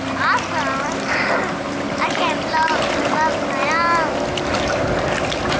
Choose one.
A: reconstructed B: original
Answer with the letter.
B